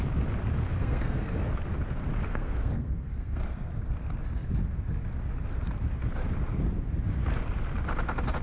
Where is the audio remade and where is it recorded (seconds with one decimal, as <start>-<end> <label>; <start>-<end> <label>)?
0.0-0.8 recorded; 0.8-1.5 remade; 1.5-2.3 recorded; 2.3-3.7 remade; 3.7-8.4 recorded

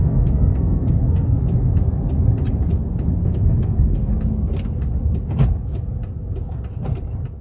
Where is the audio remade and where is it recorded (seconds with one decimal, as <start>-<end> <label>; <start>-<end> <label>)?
0.0-1.4 remade; 1.4-3.2 recorded; 3.2-4.1 remade; 4.1-7.4 recorded

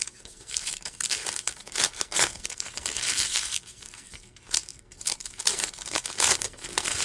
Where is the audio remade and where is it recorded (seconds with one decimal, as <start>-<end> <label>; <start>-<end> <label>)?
0.0-7.0 remade

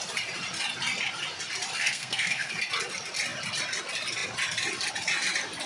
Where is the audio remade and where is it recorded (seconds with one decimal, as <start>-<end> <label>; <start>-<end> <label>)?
0.0-1.8 recorded; 1.8-2.5 remade; 2.5-5.7 recorded

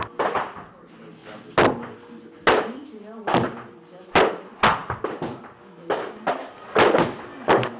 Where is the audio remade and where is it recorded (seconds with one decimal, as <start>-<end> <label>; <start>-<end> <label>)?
0.0-7.8 recorded